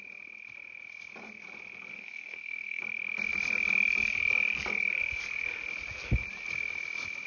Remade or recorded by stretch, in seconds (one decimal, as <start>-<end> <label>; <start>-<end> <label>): 0.0-1.9 recorded; 1.9-2.8 remade; 2.8-7.3 recorded